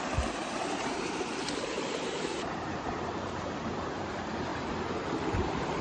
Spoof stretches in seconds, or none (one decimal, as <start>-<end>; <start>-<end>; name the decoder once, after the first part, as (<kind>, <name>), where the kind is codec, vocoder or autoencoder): 0.0-4.5 (vocoder, BigVGAN v2)